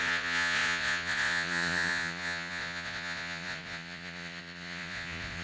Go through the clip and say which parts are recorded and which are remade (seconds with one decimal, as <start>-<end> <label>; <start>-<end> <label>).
0.0-5.4 remade